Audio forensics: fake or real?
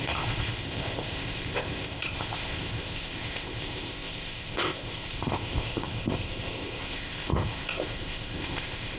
fake